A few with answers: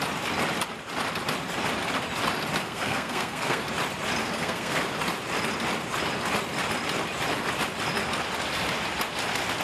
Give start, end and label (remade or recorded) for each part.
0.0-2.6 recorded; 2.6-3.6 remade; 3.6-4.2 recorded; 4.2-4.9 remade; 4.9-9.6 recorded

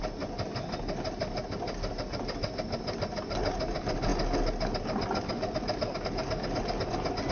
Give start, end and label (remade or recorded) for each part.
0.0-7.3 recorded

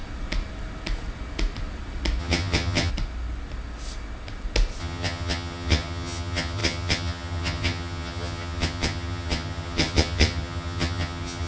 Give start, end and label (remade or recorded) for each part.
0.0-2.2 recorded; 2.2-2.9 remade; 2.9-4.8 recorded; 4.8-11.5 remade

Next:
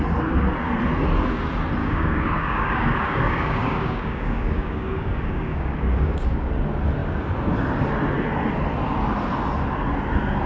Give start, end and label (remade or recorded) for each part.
0.0-1.8 recorded; 1.8-6.5 remade; 6.5-10.5 recorded

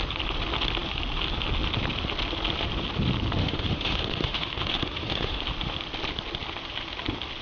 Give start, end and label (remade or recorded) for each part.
0.0-3.4 recorded; 3.4-5.4 remade; 5.4-7.4 recorded

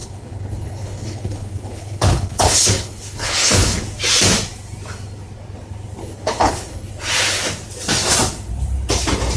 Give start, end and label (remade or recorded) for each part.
0.0-3.8 remade; 3.8-6.0 recorded; 6.0-6.9 remade; 6.9-9.4 recorded

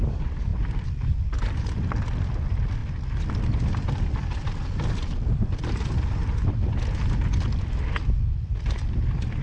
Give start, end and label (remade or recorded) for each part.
0.0-0.5 recorded; 0.5-2.4 remade; 2.4-2.8 recorded; 2.8-5.9 remade; 5.9-9.4 recorded

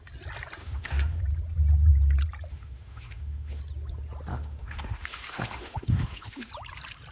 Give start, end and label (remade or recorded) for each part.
0.0-0.6 recorded; 0.6-1.2 remade; 1.2-2.5 recorded; 2.5-3.6 remade; 3.6-4.3 recorded; 4.3-6.5 remade; 6.5-7.1 recorded